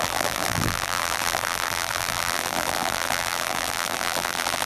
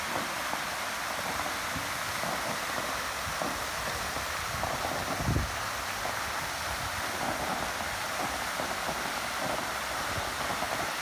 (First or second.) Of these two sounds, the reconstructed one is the first